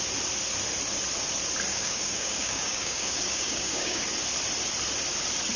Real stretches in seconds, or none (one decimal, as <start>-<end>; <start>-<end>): 0.0-1.7; 4.0-5.6